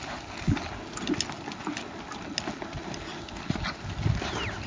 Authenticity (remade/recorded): recorded